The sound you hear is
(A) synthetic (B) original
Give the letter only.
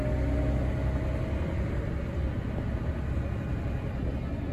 B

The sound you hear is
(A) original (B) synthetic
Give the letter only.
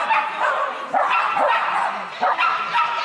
A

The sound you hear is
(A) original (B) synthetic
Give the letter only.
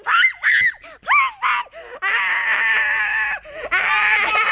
A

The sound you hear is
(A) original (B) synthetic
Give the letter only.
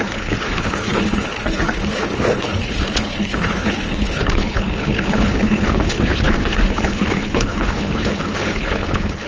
B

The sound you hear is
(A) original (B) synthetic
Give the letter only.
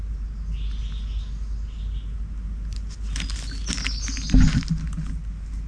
A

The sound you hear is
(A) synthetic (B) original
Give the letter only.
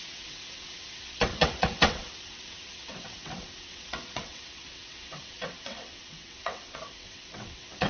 A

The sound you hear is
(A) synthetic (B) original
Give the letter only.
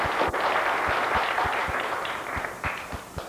B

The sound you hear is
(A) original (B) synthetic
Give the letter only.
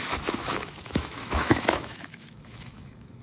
B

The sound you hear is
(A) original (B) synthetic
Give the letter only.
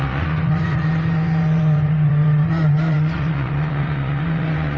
B